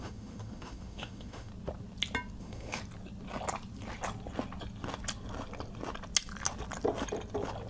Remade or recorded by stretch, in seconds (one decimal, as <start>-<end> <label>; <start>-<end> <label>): 0.0-1.5 remade; 1.5-2.4 recorded; 2.4-2.8 remade; 2.8-7.7 recorded